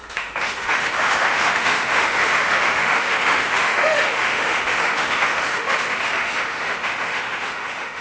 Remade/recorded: remade